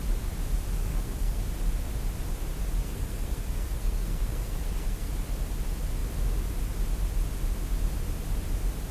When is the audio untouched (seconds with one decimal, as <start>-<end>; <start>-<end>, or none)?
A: 0.0-0.8; 1.4-2.8; 5.1-8.9